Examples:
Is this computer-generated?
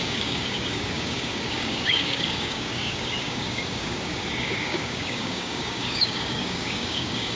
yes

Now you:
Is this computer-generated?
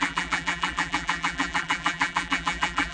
yes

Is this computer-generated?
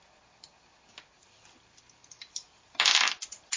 no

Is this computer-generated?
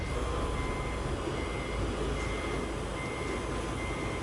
no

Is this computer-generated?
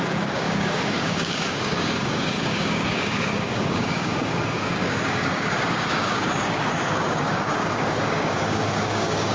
yes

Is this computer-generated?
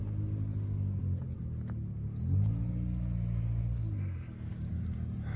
no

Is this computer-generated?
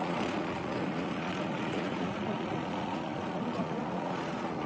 yes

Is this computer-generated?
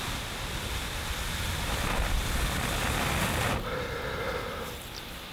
no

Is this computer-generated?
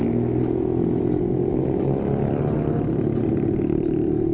no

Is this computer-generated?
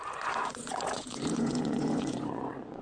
yes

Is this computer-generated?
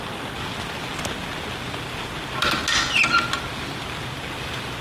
no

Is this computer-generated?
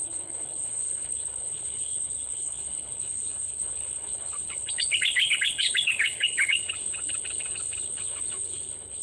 yes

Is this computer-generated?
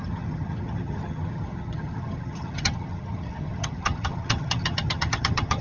yes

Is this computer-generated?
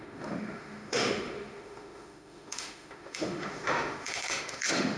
yes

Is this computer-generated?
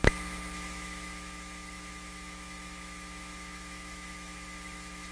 yes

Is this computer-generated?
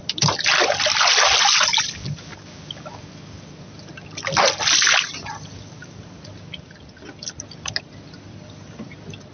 no